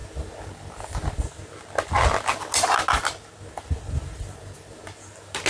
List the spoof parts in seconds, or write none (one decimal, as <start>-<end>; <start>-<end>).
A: none